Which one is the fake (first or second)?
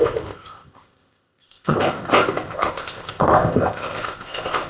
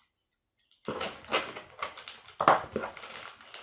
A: first